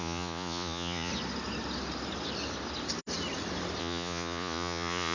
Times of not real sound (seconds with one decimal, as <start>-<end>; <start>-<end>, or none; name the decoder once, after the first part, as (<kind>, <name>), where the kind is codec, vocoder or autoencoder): 0.0-1.1 (vocoder, Vocos); 3.8-5.1